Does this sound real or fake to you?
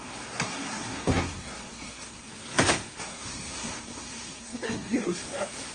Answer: fake